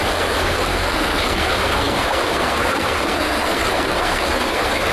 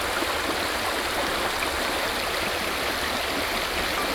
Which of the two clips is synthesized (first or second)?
first